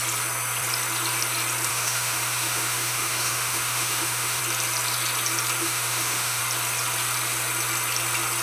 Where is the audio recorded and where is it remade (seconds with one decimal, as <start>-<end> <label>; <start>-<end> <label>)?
0.0-1.7 recorded; 1.7-4.4 remade; 4.4-5.6 recorded; 5.6-6.4 remade; 6.4-8.4 recorded